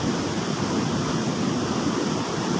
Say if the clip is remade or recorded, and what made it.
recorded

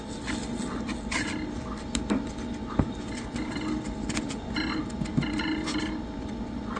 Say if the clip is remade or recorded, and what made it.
recorded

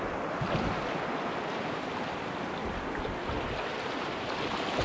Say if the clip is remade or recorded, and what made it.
recorded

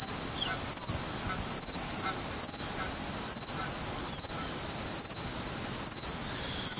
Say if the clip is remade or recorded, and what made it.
recorded